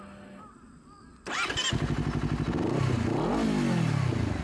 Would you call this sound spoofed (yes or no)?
no